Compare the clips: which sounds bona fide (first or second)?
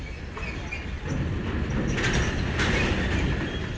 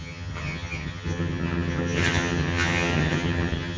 first